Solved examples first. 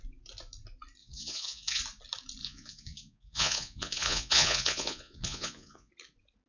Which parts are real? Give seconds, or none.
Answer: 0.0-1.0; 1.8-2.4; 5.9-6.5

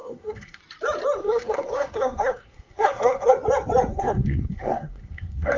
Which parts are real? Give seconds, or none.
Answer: 0.6-1.2; 3.3-3.9

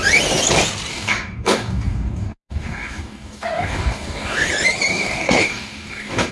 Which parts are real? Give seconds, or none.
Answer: 0.0-0.9; 4.5-4.9